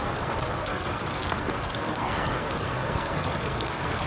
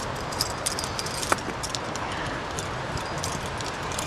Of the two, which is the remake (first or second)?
first